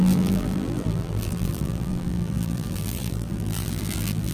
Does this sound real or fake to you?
fake